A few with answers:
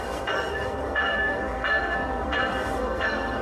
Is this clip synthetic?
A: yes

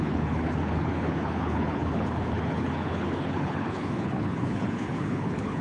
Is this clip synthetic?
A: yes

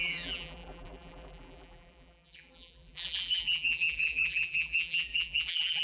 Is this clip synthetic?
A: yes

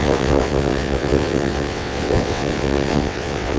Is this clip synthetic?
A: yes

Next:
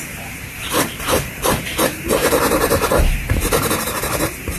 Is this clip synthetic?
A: yes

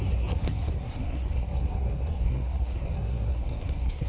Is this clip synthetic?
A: yes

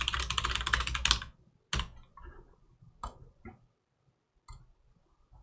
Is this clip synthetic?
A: no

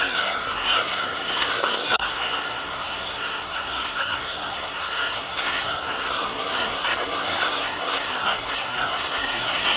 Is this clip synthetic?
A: yes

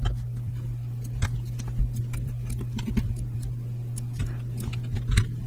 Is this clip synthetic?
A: no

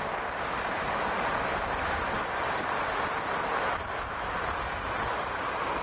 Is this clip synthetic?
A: no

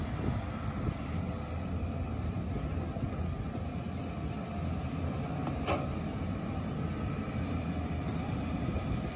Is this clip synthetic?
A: no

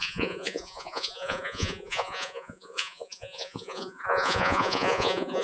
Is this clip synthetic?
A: yes